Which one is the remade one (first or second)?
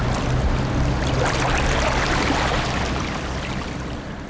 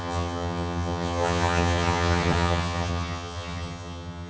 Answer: second